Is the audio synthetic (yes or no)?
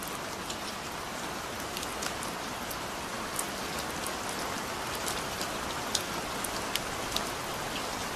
no